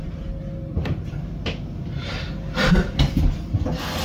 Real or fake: real